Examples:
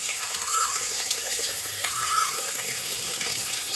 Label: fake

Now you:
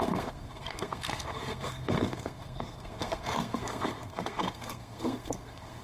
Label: fake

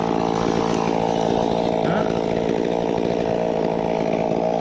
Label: real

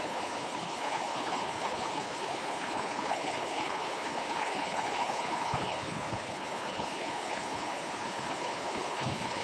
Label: fake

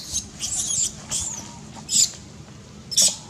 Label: real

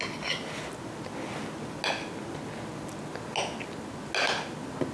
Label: real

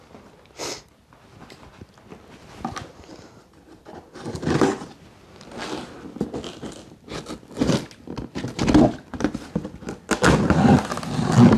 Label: real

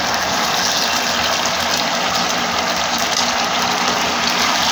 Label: real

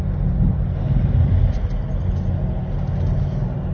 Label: real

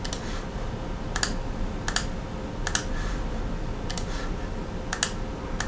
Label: real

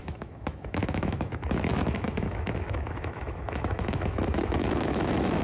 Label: fake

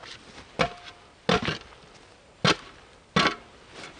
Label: real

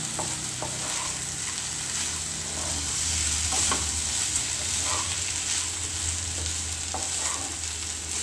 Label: real